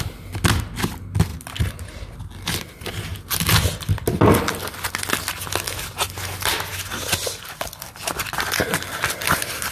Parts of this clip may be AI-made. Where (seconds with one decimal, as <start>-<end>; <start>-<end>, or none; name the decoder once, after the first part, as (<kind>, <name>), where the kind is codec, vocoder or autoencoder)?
none